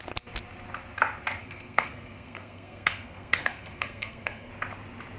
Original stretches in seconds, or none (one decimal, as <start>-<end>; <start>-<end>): 0.0-1.4; 4.5-5.2